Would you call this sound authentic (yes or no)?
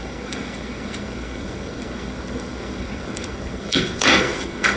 no